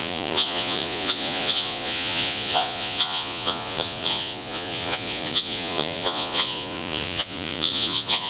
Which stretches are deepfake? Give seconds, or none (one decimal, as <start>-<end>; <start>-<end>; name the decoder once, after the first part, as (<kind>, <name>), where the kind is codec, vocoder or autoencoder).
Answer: 0.0-8.3 (vocoder, Vocos)